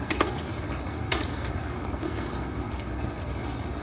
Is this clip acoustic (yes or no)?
no